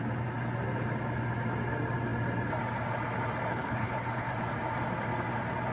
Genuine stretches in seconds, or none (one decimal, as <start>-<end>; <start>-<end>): 0.0-3.5; 4.3-5.7